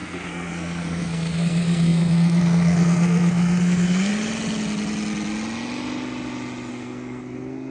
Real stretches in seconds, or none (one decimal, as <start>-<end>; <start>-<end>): 4.1-6.7